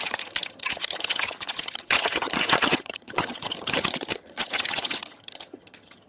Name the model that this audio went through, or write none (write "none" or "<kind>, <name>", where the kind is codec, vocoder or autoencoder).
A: vocoder, HiFi-GAN